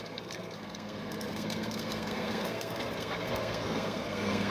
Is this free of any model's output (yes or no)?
no